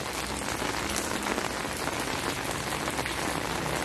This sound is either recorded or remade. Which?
recorded